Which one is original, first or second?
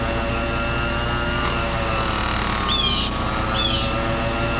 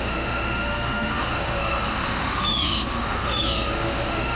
first